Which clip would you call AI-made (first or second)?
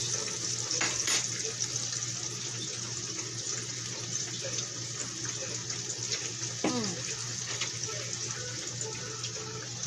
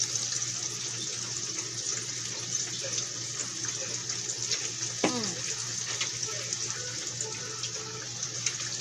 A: first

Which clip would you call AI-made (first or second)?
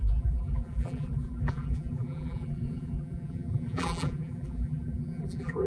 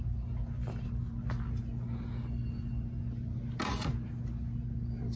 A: first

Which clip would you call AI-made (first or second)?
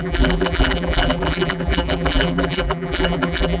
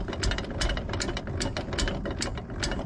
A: first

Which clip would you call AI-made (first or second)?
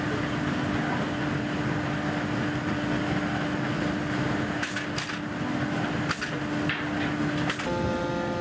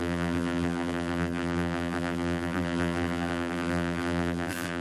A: second